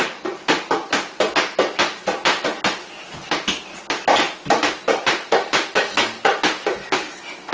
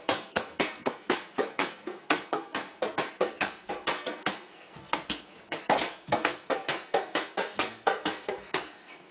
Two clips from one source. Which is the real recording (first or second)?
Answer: first